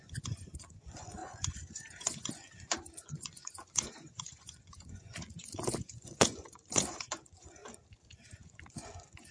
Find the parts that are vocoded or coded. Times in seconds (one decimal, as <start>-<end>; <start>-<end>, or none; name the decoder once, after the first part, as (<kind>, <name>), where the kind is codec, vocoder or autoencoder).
0.0-7.6 (vocoder, Vocos); 8.3-9.3

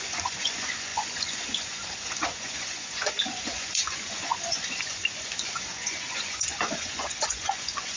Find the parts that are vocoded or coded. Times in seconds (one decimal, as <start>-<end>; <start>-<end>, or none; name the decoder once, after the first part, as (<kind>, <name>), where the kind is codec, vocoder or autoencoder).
0.0-8.0 (vocoder, Vocos)

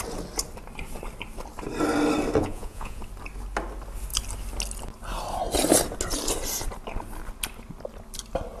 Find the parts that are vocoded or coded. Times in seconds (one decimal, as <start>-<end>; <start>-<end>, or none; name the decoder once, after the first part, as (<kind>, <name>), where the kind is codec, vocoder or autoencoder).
2.4-3.0 (vocoder, Vocos)

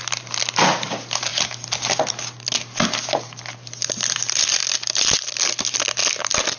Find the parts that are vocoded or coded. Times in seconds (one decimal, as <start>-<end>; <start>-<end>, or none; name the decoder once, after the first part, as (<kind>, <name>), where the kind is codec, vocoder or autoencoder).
none

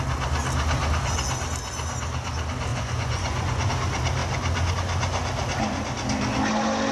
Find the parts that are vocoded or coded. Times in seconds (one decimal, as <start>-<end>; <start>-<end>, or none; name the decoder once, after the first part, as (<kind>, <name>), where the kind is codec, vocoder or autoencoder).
2.7-3.7 (vocoder, Vocos)